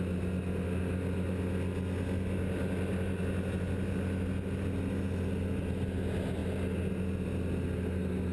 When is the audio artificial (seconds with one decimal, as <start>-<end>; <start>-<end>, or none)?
none